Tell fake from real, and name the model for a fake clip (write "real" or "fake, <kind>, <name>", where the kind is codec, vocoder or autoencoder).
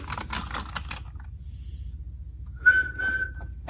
real